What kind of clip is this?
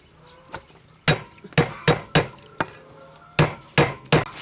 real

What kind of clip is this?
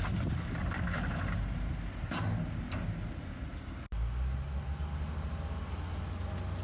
real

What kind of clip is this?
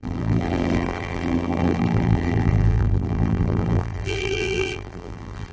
fake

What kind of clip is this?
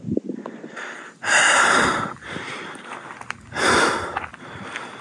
fake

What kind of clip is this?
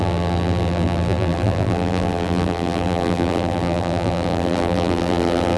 fake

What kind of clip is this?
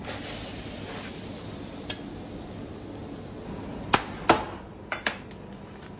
real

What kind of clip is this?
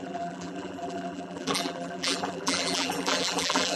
fake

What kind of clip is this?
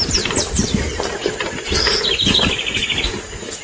fake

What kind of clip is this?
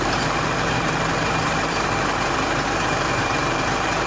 fake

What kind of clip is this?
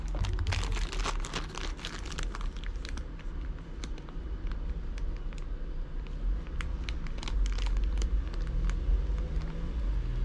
real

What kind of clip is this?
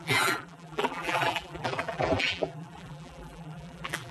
fake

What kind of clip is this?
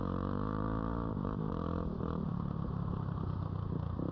fake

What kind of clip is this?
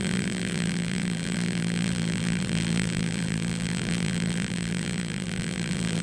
fake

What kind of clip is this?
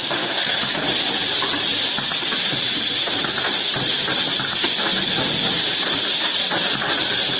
real